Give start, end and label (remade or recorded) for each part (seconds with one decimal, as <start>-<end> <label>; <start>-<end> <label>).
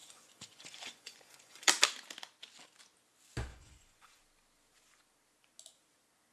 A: 0.0-1.7 remade; 1.7-3.5 recorded; 3.5-4.2 remade; 4.2-6.3 recorded